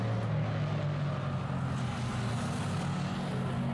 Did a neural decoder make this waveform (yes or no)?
no